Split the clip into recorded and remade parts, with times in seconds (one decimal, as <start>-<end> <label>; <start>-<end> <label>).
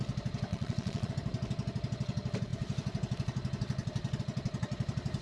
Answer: 0.0-0.5 recorded; 0.5-1.1 remade; 1.1-5.2 recorded